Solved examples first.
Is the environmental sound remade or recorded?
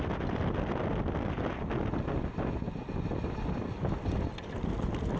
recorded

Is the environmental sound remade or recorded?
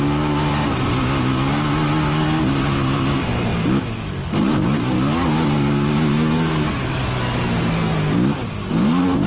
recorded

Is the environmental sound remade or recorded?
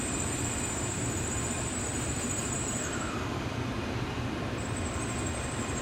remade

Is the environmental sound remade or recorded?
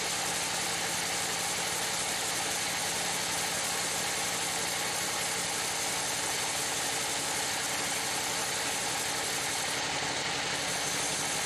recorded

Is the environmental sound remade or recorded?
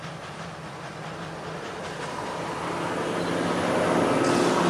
recorded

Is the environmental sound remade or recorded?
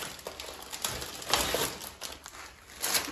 recorded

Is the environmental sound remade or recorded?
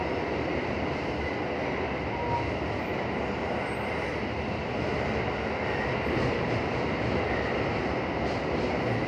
recorded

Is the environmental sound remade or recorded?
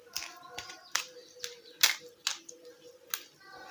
recorded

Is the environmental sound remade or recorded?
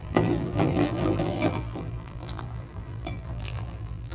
remade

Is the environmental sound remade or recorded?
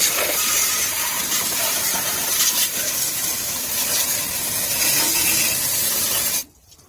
remade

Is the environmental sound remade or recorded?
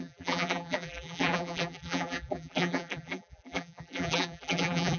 remade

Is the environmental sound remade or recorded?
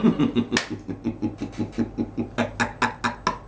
recorded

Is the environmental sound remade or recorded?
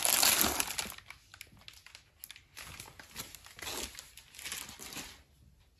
recorded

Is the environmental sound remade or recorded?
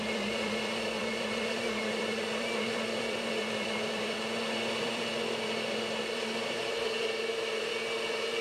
remade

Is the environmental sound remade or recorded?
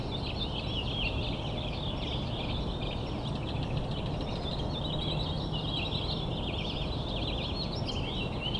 recorded